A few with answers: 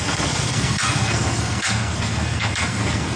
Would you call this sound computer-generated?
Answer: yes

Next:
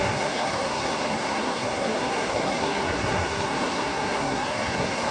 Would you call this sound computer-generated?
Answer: yes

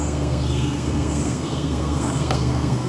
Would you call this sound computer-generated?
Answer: yes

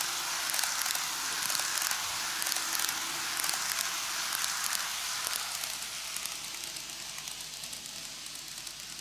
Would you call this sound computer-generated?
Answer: no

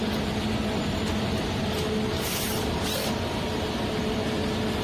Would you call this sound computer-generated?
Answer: no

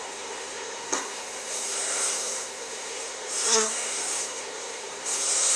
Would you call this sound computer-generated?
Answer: yes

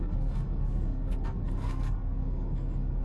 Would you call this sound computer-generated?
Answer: yes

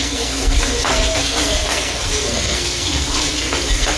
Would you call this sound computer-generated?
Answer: yes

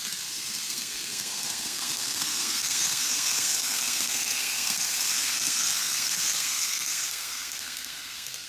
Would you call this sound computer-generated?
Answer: yes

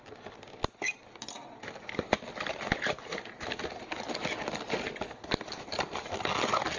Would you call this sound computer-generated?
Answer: no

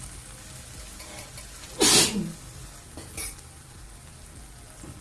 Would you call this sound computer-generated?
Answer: no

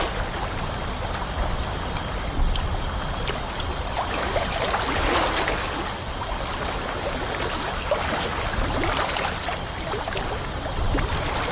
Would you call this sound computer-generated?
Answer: no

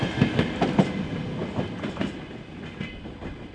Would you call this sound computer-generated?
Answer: no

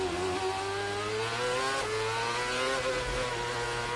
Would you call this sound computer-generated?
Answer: no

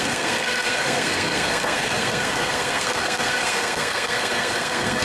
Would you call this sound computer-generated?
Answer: yes